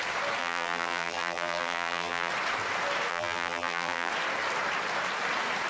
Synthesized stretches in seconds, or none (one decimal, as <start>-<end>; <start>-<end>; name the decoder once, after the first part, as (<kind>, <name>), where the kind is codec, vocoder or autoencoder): 0.4-2.3 (vocoder, BigVGAN v2); 3.1-4.1

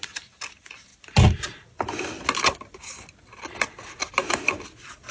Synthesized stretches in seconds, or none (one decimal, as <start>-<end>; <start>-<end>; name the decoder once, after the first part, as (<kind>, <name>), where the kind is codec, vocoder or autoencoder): none

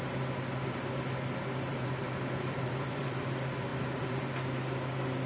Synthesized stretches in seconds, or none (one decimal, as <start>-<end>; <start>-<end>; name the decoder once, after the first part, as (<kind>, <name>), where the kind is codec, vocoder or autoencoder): 1.7-3.2 (vocoder, BigVGAN v2); 3.7-4.3

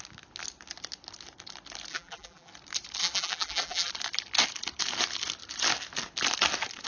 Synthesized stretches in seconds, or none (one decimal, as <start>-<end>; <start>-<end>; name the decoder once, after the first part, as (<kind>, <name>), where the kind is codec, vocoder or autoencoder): 1.9-2.5 (vocoder, BigVGAN v2); 3.0-3.9

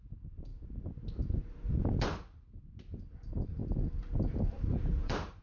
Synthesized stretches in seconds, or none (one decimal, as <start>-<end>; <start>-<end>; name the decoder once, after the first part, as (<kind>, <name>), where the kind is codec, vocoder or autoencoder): 0.0-0.5 (vocoder, BigVGAN v2); 3.0-3.6; 4.4-5.4

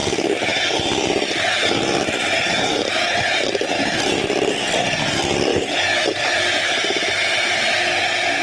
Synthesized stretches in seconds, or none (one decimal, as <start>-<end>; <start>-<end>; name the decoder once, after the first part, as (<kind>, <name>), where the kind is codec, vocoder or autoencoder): 5.5-6.6 (vocoder, BigVGAN v2)

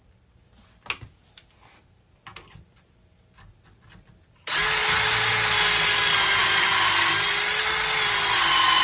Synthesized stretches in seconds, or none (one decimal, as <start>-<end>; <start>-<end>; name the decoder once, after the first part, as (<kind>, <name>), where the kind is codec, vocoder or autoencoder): 4.8-5.3 (vocoder, BigVGAN v2); 6.4-7.1

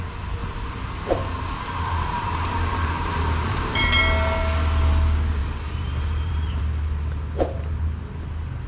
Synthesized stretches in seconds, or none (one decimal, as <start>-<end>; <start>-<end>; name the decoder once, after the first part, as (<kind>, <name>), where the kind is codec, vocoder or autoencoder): 0.4-4.0 (vocoder, BigVGAN v2); 5.4-6.6